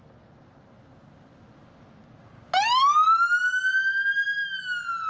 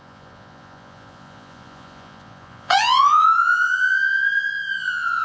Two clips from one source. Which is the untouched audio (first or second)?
first